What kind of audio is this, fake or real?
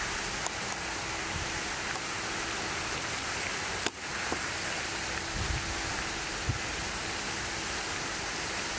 real